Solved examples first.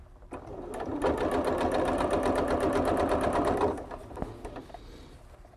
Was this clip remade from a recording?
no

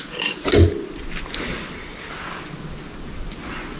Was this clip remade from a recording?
no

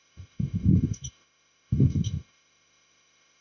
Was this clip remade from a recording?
yes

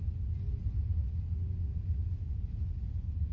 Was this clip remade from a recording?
no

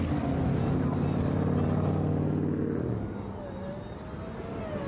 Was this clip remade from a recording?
no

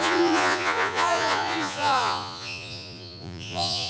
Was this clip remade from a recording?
yes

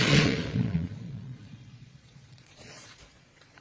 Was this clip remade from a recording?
yes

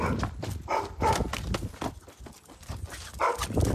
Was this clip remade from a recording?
no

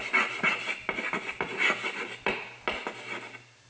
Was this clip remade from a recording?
no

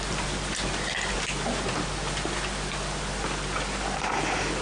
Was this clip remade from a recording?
no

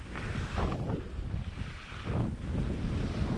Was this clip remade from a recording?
no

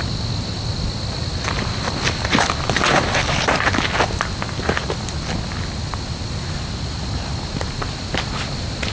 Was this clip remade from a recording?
no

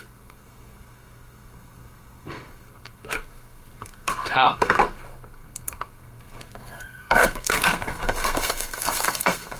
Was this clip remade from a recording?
yes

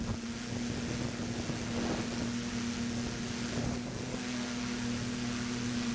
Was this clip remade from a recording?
no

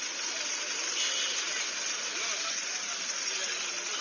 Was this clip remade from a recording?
no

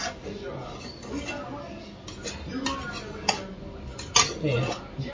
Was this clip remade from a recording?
no